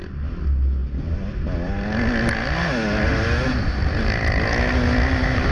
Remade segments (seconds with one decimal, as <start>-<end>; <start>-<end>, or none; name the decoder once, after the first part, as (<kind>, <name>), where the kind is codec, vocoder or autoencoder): none